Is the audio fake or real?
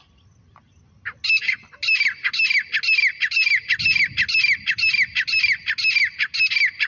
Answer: real